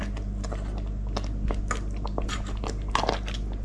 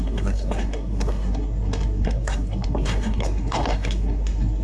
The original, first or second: first